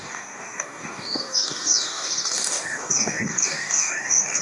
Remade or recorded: remade